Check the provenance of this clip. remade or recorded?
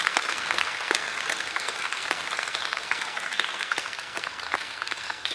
remade